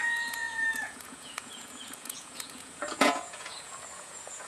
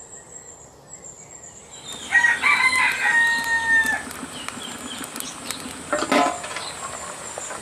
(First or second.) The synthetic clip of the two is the first